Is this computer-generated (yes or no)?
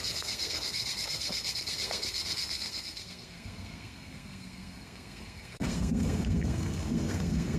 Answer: yes